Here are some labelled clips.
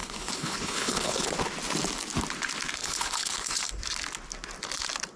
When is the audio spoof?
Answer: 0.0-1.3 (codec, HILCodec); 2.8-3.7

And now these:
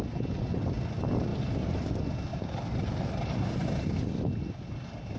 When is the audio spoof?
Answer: 1.3-1.9 (vocoder, BigVGAN v2); 2.3-3.5

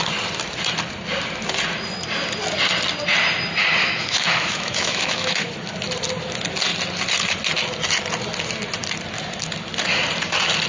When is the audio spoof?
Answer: 3.8-5.5 (autoencoder, DAC-VAE)

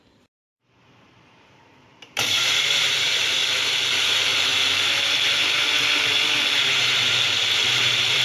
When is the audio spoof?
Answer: 0.0-3.4 (vocoder, BigVGAN v2); 4.0-4.5; 6.6-8.2

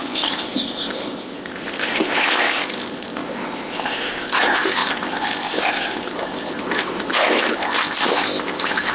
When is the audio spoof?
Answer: 0.0-8.9 (codec, ZipCodec)